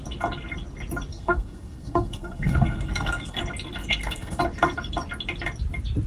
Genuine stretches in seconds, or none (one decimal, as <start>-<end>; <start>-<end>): 0.0-1.1; 3.4-3.8; 4.4-6.1